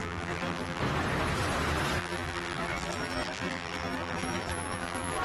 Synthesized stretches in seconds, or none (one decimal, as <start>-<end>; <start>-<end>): 0.0-0.8; 2.0-5.2